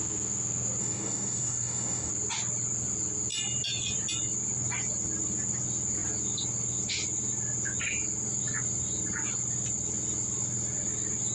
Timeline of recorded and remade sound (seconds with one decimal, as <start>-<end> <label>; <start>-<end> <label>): 0.0-0.8 recorded; 0.8-2.1 remade; 2.1-11.3 recorded